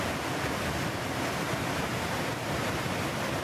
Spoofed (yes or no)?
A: yes